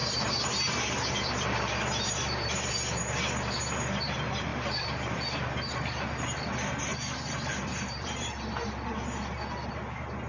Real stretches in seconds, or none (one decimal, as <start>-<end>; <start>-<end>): 2.9-6.9; 8.3-10.3